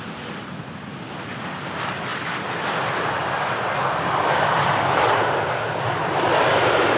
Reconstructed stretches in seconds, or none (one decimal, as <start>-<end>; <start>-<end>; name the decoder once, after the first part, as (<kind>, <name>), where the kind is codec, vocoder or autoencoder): none